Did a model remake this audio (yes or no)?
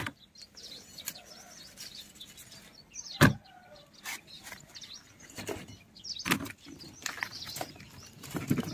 no